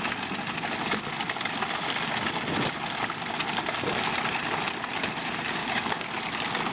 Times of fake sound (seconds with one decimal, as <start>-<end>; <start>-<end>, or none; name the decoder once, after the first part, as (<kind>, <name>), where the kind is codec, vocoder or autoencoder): 5.6-6.1 (codec, DAC)